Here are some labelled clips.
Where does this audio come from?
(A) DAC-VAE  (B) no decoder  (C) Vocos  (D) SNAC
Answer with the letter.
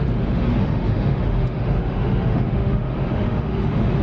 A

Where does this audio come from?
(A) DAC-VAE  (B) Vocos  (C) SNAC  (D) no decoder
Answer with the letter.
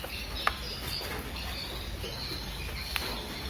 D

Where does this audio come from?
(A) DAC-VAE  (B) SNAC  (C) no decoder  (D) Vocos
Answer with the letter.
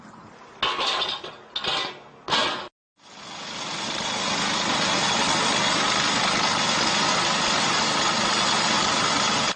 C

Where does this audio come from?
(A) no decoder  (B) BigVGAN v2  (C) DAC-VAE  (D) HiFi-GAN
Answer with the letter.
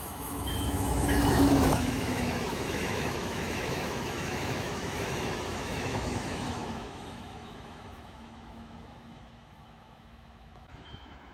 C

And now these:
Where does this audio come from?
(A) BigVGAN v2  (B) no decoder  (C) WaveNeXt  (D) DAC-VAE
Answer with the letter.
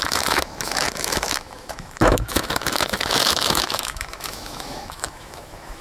D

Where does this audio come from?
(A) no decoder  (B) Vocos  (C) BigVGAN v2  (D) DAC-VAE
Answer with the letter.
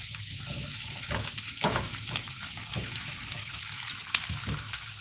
D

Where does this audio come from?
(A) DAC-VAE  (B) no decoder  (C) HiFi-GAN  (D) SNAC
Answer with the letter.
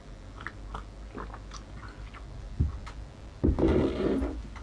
B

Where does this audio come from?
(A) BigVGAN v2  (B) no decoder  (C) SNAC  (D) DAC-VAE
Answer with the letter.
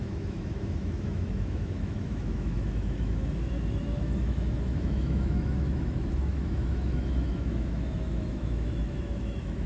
D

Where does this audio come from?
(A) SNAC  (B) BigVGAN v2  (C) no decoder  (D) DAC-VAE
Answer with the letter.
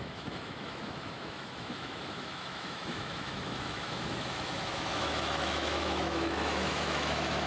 D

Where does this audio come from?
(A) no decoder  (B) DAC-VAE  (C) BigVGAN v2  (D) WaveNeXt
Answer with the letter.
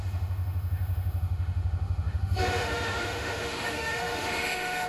B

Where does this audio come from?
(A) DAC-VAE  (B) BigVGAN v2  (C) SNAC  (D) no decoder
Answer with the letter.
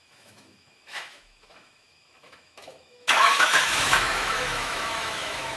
A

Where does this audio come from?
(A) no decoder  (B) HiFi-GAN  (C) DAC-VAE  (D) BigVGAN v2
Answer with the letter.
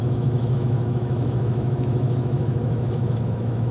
C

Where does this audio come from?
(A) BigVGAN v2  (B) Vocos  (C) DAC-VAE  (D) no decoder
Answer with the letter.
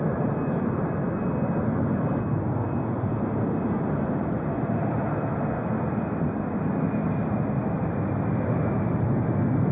D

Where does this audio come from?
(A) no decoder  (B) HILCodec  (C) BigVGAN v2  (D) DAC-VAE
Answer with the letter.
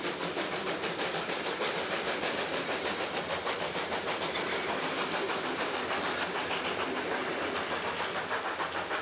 A